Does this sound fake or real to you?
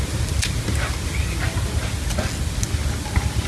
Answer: real